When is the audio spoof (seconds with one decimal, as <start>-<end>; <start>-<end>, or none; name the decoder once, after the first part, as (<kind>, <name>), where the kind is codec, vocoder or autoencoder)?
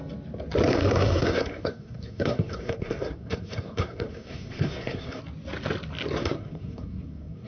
0.7-5.2 (codec, SNAC); 6.2-7.5